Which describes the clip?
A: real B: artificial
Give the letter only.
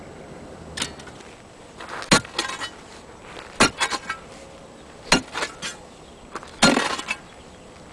A